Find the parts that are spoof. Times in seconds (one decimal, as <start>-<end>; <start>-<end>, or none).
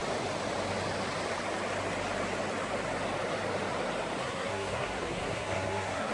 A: 4.2-6.1